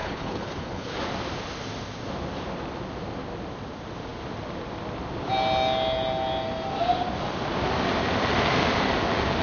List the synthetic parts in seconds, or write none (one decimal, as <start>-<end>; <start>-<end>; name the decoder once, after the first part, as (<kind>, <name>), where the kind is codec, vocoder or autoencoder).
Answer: 0.0-1.0 (codec, HILCodec)